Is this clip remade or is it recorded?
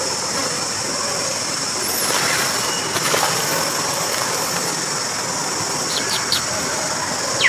recorded